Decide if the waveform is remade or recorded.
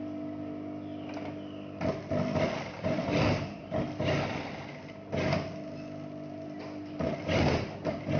recorded